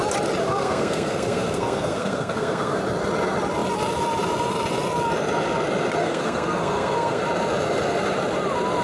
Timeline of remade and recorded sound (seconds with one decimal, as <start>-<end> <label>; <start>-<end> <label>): 0.0-0.4 recorded; 0.4-2.8 remade; 2.8-6.0 recorded; 6.0-7.2 remade; 7.2-8.8 recorded